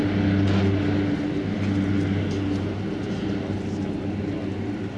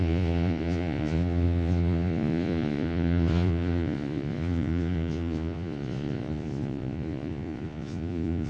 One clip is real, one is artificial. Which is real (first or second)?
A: first